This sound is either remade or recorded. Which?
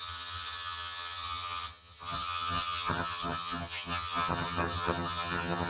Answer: remade